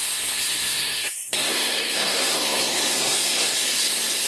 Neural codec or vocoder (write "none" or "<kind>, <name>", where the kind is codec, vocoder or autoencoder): codec, SNAC